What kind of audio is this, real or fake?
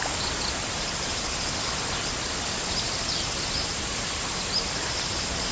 real